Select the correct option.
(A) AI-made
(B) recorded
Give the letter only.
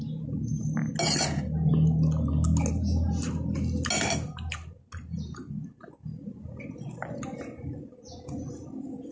B